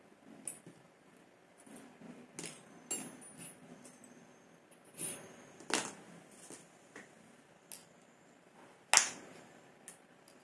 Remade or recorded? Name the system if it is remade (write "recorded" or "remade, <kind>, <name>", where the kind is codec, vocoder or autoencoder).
recorded